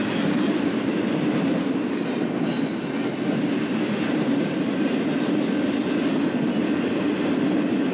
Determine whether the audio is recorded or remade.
recorded